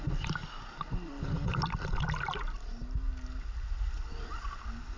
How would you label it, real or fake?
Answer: real